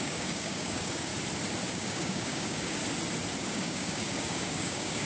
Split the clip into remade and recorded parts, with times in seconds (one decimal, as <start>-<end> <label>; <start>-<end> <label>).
0.0-1.1 remade; 1.1-1.7 recorded; 1.7-2.8 remade; 2.8-3.4 recorded; 3.4-5.1 remade